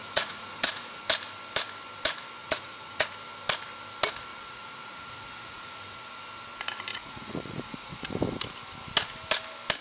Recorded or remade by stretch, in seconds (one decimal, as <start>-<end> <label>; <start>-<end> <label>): 0.0-1.0 remade; 1.0-2.4 recorded; 2.4-3.1 remade; 3.1-4.3 recorded; 4.3-6.1 remade; 6.1-6.9 recorded; 6.9-8.2 remade; 8.2-9.8 recorded